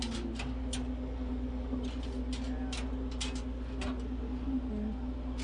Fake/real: real